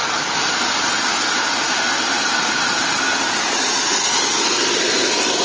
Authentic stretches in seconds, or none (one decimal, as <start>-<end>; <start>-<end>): 0.0-5.4